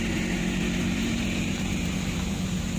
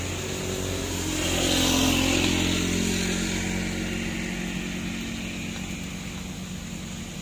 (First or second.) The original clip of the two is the second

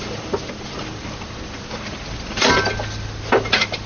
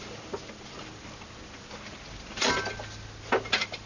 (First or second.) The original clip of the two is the second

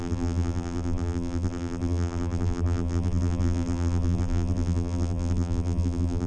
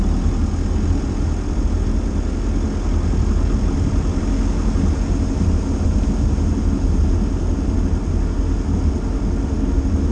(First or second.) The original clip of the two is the second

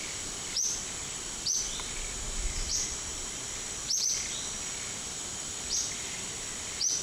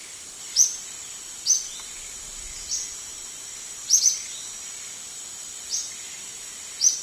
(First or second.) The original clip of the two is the second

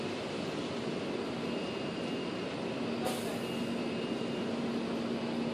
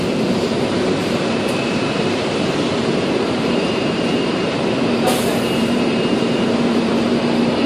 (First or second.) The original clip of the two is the first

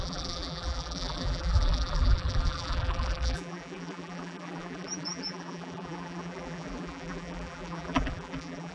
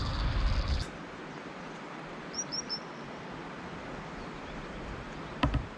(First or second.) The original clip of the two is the second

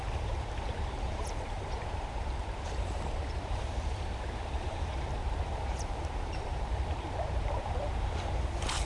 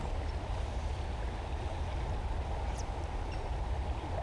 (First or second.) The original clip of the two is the second